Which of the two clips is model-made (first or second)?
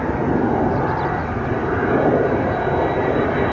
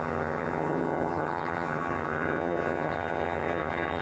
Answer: second